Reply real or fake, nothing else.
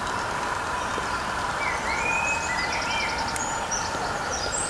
real